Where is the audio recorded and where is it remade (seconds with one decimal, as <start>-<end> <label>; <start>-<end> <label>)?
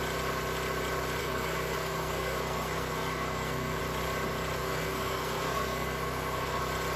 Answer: 0.0-1.2 recorded; 1.2-3.8 remade; 3.8-4.6 recorded; 4.6-6.6 remade; 6.6-7.0 recorded